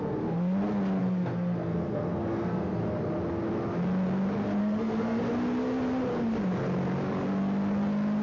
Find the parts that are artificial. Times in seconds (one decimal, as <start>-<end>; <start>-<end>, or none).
1.0-2.8; 4.6-5.2